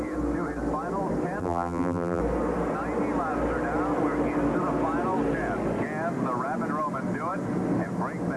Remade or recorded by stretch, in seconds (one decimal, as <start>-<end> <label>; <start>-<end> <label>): 0.0-1.4 recorded; 1.4-2.2 remade; 2.2-8.4 recorded